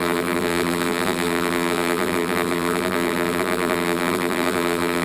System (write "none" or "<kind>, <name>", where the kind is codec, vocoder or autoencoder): vocoder, BigVGAN v2